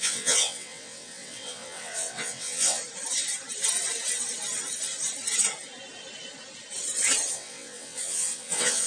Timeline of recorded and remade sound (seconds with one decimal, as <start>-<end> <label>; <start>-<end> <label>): 0.0-2.8 remade; 2.8-7.3 recorded; 7.3-8.9 remade